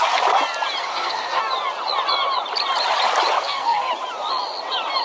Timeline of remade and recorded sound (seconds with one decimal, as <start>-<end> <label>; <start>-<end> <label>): 0.0-0.8 recorded; 0.8-1.4 remade; 1.4-3.4 recorded; 3.4-3.9 remade; 3.9-5.0 recorded